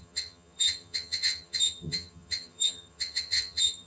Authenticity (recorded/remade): remade